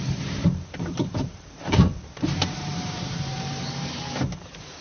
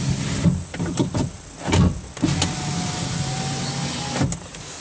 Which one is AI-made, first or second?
first